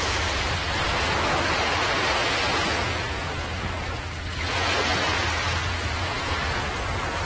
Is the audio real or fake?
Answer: fake